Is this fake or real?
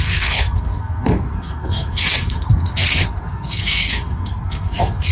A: fake